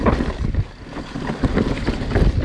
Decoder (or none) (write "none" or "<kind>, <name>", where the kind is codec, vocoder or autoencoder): none